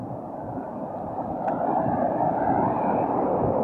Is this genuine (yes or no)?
no